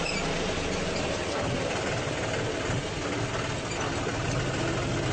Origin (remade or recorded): recorded